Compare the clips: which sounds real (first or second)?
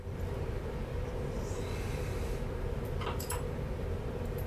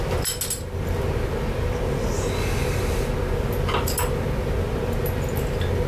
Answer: second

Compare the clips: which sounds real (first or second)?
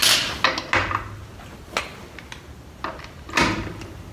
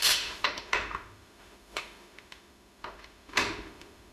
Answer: first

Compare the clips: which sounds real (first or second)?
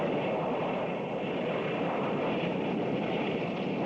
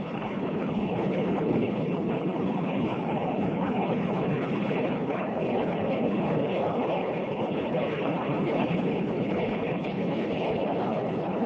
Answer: first